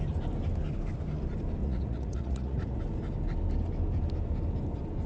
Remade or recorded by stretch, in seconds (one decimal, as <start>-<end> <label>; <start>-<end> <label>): 0.0-1.6 recorded; 1.6-2.8 remade; 2.8-5.1 recorded